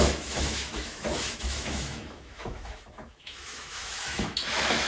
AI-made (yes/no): yes